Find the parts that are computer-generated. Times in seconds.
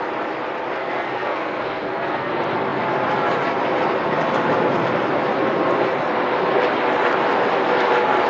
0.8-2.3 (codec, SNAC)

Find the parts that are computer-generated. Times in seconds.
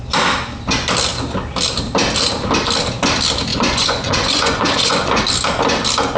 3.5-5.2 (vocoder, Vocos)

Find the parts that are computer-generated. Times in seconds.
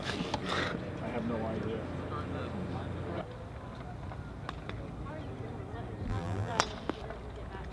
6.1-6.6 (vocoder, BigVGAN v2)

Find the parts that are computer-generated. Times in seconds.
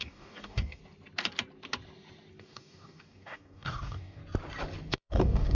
0.0-0.8 (codec, DAC); 2.4-4.2; 4.9-5.5